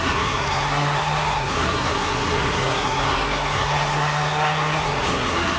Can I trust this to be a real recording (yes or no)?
no